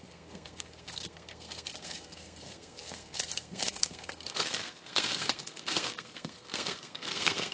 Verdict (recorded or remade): remade